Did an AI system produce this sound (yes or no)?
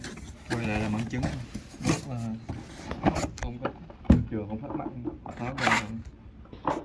no